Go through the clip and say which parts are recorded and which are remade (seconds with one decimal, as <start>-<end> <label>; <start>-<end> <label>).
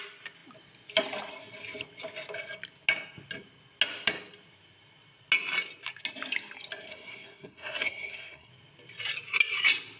0.0-6.9 recorded; 6.9-8.5 remade; 8.5-10.0 recorded